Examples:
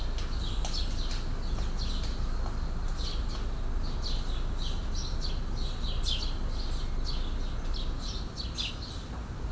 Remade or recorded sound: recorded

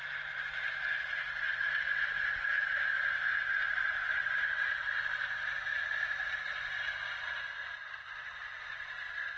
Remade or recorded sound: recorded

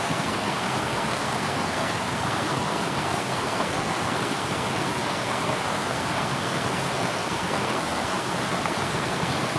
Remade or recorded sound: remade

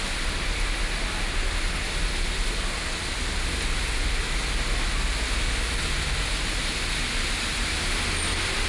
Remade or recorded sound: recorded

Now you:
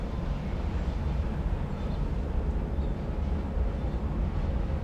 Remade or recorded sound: recorded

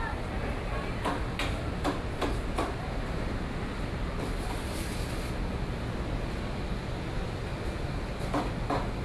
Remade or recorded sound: recorded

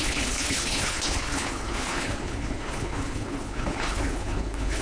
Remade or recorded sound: remade